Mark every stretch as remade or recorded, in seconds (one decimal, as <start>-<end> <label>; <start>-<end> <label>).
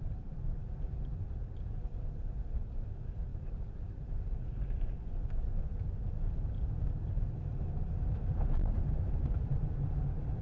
0.0-10.4 remade